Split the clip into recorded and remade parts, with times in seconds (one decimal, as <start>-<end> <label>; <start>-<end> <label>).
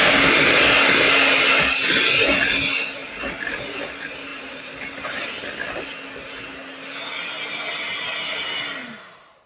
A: 0.0-4.3 recorded; 4.3-5.4 remade; 5.4-9.5 recorded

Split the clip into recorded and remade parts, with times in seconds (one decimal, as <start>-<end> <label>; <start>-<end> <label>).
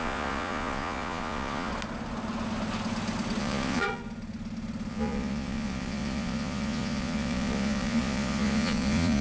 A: 0.0-1.7 remade; 1.7-3.4 recorded; 3.4-4.0 remade; 4.0-4.9 recorded; 4.9-9.2 remade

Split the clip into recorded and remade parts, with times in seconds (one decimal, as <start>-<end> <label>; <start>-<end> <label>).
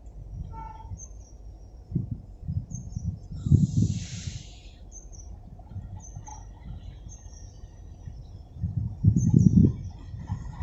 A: 0.0-6.3 remade; 6.3-7.1 recorded; 7.1-9.6 remade; 9.6-10.2 recorded; 10.2-10.6 remade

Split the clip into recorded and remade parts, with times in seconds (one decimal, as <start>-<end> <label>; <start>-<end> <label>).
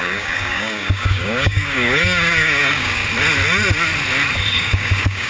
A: 0.0-3.0 remade; 3.0-4.5 recorded; 4.5-5.3 remade